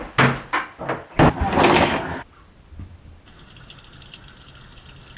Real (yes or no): yes